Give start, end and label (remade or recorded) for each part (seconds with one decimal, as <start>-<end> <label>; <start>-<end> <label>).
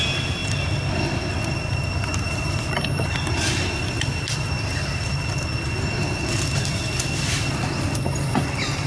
0.0-8.9 recorded